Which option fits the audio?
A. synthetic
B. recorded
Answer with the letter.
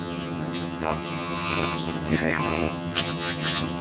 A